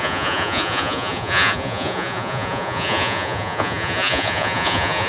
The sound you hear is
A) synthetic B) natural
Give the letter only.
A